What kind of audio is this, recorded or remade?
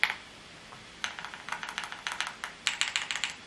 recorded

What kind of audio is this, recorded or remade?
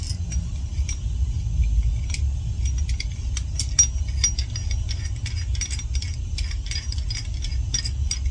recorded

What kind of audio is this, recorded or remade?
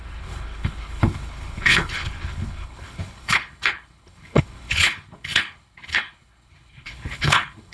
remade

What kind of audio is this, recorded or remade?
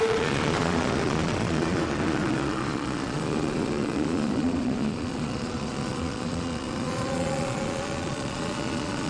remade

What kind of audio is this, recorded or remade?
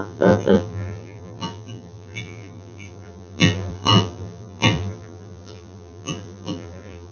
remade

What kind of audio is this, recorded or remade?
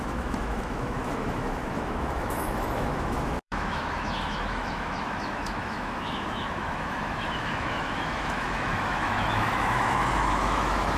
remade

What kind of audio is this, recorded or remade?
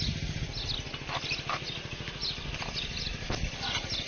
recorded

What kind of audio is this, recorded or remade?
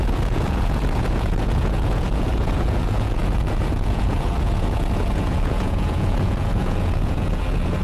remade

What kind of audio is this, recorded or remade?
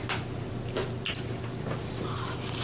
recorded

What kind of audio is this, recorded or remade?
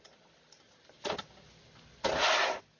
recorded